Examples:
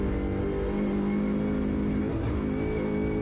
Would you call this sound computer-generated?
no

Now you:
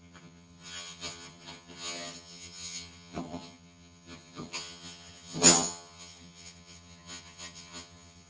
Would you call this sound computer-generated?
yes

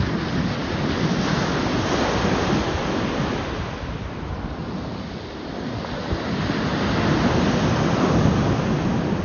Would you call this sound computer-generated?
no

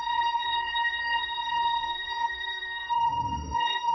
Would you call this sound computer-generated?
yes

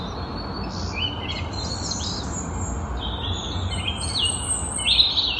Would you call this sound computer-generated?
no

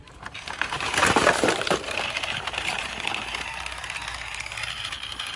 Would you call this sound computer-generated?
yes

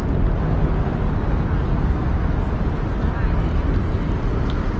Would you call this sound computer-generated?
no